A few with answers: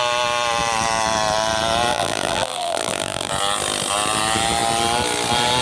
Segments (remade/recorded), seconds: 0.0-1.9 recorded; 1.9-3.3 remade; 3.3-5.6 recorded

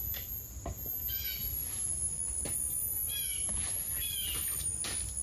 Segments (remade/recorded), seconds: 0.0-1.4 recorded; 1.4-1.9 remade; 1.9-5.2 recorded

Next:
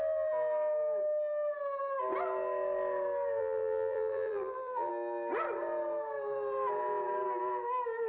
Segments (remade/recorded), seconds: 0.0-3.4 recorded; 3.4-4.9 remade; 4.9-8.1 recorded

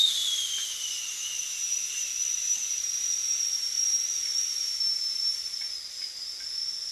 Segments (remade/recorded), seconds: 0.0-1.0 remade; 1.0-2.7 recorded; 2.7-6.9 remade

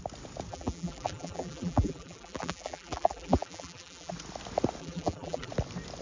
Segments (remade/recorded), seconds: 0.0-0.5 recorded; 0.5-4.1 remade; 4.1-4.8 recorded; 4.8-5.5 remade; 5.5-6.0 recorded